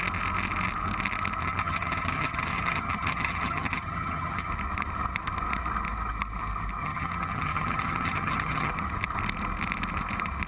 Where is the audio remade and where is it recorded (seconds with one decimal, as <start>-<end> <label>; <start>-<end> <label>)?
0.0-1.4 recorded; 1.4-4.5 remade; 4.5-6.8 recorded; 6.8-8.7 remade; 8.7-10.5 recorded

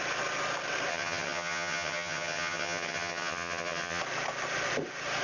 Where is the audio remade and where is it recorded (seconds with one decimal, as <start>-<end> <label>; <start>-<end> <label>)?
0.0-0.9 recorded; 0.9-4.0 remade; 4.0-5.2 recorded

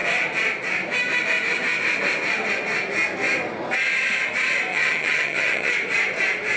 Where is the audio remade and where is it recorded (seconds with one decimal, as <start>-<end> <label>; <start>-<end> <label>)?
0.0-4.7 recorded; 4.7-5.7 remade; 5.7-6.6 recorded